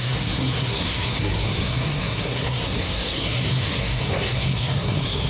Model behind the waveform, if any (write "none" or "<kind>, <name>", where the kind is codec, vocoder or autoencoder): codec, SNAC